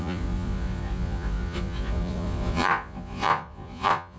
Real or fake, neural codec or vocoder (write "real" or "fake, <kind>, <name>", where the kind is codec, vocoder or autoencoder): fake, vocoder, Vocos